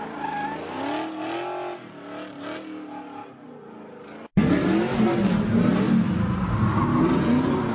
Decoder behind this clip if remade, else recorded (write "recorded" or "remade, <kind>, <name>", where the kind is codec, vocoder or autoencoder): recorded